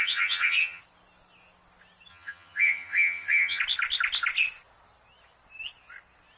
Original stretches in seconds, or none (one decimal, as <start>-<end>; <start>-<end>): 0.8-2.1; 3.6-6.4